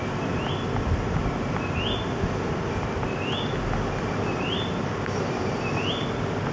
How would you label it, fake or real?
real